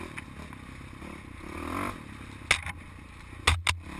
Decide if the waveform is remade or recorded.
recorded